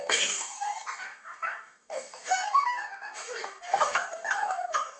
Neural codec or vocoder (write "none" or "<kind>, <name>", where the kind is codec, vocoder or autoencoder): codec, DAC